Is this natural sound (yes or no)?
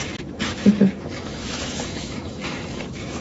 no